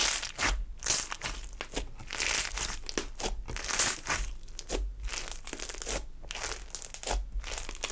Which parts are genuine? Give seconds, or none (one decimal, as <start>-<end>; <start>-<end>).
0.0-7.9

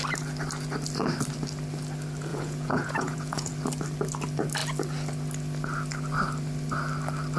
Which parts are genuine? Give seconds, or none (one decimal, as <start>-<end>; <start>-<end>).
0.0-2.3; 3.5-7.4